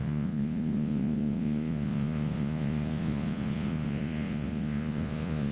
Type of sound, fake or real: fake